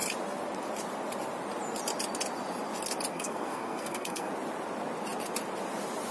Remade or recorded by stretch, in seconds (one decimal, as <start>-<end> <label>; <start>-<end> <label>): 0.0-3.1 recorded; 3.1-4.3 remade; 4.3-6.1 recorded

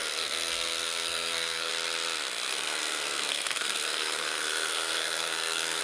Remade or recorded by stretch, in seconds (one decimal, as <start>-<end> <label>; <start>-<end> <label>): 0.0-1.7 remade; 1.7-2.5 recorded; 2.5-5.8 remade

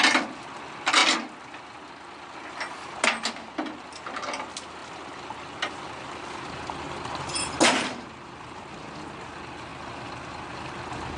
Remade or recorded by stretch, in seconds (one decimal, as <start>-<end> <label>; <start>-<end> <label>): 0.0-11.2 recorded